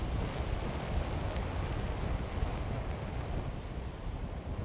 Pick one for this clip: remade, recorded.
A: recorded